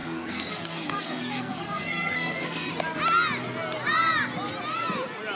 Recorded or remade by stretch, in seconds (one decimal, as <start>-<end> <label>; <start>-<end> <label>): 0.0-2.7 remade; 2.7-5.4 recorded